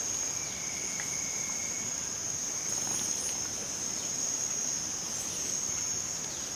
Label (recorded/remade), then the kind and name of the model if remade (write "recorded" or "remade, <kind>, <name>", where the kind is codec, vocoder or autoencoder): recorded